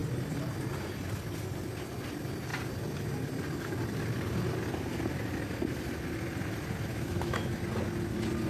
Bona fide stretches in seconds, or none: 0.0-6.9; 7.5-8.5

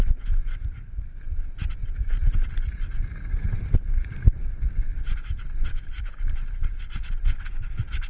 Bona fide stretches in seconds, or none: 0.0-5.7; 6.2-8.1